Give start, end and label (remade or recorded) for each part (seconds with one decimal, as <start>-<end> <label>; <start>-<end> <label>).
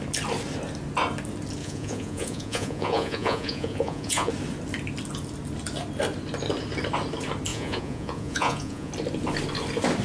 0.0-1.6 recorded; 1.6-4.3 remade; 4.3-7.5 recorded; 7.5-8.9 remade; 8.9-10.0 recorded